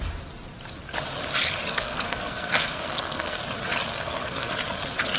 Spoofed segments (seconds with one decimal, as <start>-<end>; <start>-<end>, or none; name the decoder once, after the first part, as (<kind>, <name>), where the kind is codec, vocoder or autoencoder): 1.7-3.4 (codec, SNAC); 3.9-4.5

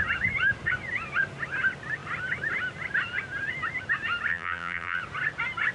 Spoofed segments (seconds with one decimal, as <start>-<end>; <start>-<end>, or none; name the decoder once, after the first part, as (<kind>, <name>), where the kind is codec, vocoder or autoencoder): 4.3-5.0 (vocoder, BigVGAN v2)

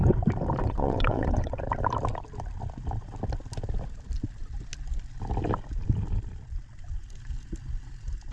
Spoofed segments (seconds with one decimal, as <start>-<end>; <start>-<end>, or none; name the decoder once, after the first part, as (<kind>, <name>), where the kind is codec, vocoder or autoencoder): 0.6-1.6 (vocoder, WaveNeXt)

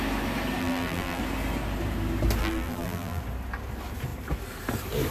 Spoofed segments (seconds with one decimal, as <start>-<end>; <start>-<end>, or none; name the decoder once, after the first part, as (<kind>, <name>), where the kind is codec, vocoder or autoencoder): 0.6-1.2 (vocoder, BigVGAN v2); 2.4-3.2